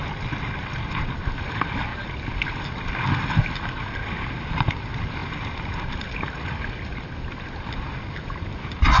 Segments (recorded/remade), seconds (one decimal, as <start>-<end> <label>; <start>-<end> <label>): 0.0-9.0 recorded